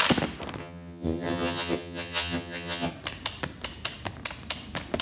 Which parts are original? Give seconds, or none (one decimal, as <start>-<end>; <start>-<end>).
0.0-0.6; 2.9-5.0